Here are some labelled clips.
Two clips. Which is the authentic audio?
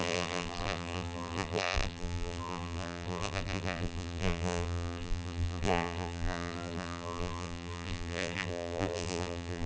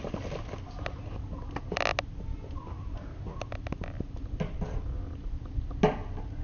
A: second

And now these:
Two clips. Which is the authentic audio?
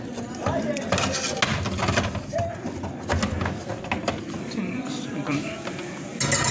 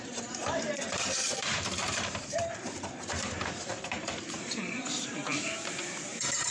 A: first